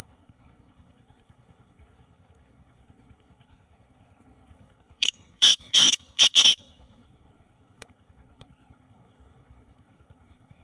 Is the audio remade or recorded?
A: remade